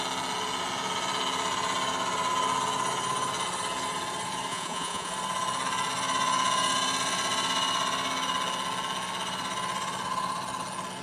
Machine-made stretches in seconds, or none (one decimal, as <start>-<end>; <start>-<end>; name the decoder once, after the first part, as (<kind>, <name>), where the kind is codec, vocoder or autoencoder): 4.5-5.1 (vocoder, Vocos)